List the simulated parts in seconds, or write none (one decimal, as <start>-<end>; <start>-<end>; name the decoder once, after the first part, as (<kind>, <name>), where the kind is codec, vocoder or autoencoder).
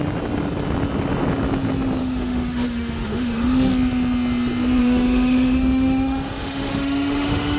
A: 2.0-3.7 (autoencoder, DAC-VAE); 4.8-7.6